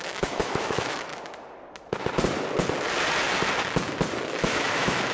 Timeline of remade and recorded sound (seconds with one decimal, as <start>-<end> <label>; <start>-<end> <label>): 0.0-1.1 remade; 1.1-4.2 recorded; 4.2-5.1 remade